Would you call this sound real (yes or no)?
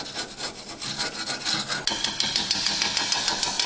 yes